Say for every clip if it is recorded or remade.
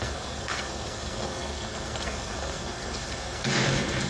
remade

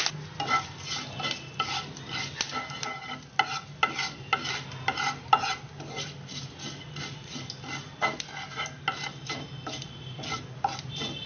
recorded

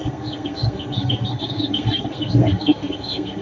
remade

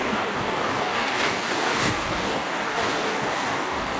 remade